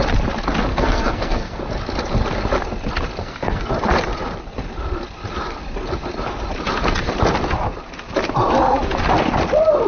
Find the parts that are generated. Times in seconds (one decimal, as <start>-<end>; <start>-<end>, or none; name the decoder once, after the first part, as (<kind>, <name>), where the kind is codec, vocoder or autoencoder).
0.7-1.6 (codec, SNAC); 3.2-3.7